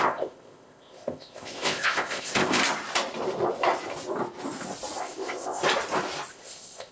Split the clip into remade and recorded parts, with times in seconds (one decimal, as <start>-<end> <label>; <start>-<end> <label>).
0.0-2.6 remade; 2.6-5.0 recorded; 5.0-5.6 remade; 5.6-6.3 recorded; 6.3-6.9 remade